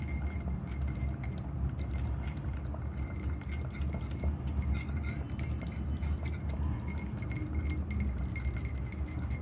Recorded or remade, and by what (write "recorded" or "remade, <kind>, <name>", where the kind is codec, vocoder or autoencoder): recorded